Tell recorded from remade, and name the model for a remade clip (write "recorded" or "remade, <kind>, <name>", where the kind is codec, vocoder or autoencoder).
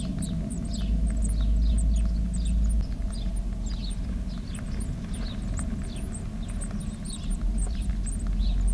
recorded